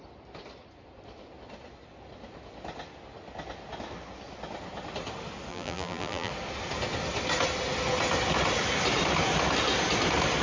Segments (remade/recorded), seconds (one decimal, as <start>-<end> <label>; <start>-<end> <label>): 0.0-5.5 recorded; 5.5-6.3 remade; 6.3-10.4 recorded